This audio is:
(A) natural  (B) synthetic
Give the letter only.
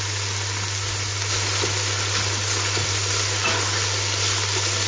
A